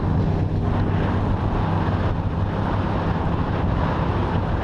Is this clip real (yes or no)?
yes